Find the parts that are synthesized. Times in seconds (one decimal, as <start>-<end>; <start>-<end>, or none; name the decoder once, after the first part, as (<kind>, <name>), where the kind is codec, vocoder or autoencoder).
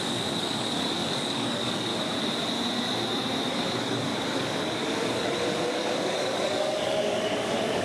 0.0-1.9 (codec, DAC); 3.4-7.8